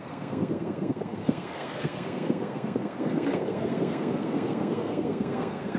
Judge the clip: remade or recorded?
remade